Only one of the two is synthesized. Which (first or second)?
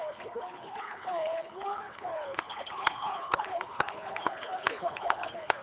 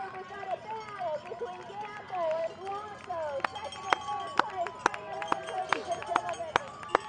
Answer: first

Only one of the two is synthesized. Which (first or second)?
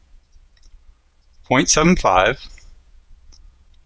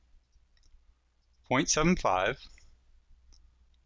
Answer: first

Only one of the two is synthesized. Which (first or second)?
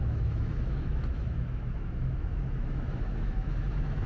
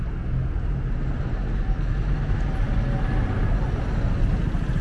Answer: first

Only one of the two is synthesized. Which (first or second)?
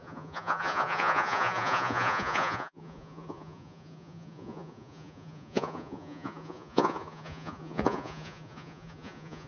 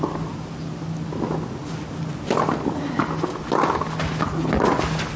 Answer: first